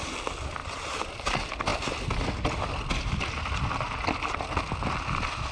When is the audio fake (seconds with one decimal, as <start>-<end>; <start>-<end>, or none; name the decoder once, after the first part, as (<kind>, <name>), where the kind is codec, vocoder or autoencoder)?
none